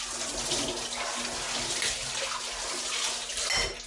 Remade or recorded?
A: recorded